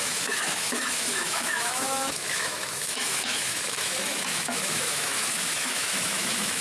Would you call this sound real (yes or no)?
no